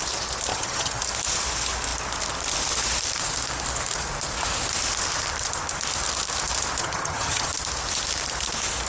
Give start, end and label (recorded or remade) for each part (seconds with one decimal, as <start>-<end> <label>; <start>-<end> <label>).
0.0-0.5 recorded; 0.5-1.0 remade; 1.0-6.8 recorded; 6.8-7.5 remade; 7.5-8.9 recorded